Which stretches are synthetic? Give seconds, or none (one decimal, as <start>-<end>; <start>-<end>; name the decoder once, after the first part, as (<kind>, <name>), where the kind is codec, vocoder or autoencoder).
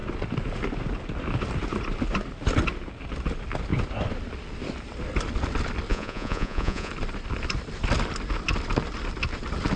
5.9-6.9 (vocoder, Vocos)